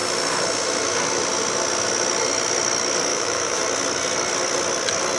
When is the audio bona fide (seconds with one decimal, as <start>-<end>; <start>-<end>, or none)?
0.0-3.1; 3.6-5.2